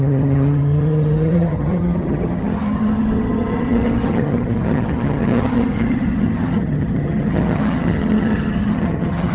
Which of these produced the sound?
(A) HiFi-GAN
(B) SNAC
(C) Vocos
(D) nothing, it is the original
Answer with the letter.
A